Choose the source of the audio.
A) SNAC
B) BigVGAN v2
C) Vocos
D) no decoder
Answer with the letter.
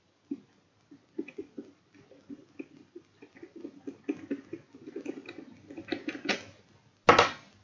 D